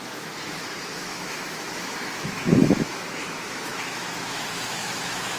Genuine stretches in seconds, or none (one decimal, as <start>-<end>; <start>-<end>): none